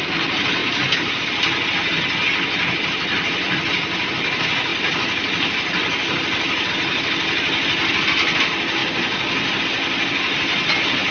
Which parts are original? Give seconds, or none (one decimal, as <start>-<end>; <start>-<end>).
0.0-0.6; 1.2-4.7; 6.7-11.1